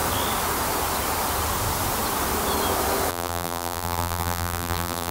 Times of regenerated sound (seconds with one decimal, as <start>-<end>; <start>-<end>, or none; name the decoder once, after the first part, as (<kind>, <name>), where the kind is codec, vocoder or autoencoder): 3.1-5.1 (vocoder, BigVGAN v2)

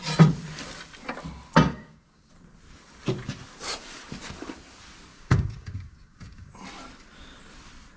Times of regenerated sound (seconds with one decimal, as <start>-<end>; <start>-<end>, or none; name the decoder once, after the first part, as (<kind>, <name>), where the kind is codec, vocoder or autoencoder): 1.7-2.3 (codec, DAC); 5.1-6.5